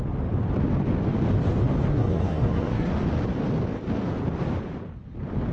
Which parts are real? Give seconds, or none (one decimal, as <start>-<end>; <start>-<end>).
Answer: 0.0-1.9; 2.9-5.5